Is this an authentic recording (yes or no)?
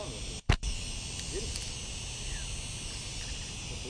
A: yes